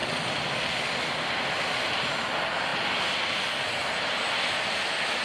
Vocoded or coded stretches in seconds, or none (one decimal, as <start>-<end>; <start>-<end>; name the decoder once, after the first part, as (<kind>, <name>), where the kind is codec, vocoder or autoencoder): none